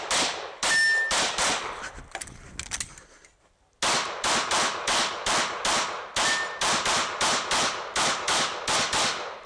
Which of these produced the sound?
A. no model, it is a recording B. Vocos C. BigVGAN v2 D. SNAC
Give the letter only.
A